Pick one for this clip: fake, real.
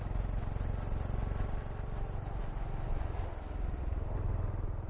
real